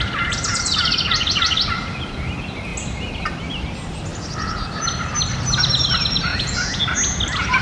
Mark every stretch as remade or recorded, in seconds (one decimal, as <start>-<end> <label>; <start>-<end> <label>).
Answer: 0.0-6.3 recorded; 6.3-6.8 remade; 6.8-7.6 recorded